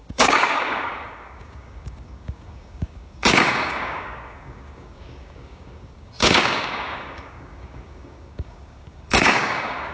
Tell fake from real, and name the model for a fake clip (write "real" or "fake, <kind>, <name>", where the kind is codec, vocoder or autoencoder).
fake, codec, DAC